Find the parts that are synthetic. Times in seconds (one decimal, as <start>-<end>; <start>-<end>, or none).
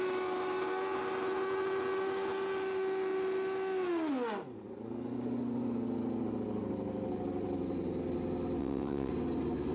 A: 8.6-9.1